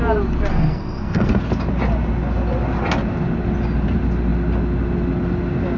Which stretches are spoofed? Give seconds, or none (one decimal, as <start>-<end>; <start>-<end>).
0.5-1.4